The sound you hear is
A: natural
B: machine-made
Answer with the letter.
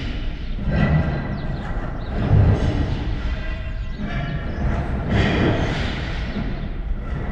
B